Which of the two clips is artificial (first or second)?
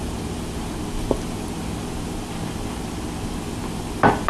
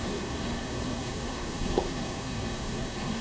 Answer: second